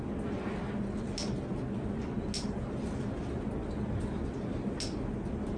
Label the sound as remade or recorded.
recorded